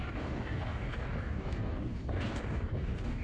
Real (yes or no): no